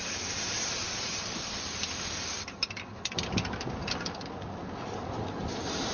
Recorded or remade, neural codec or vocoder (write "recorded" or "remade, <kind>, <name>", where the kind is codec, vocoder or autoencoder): recorded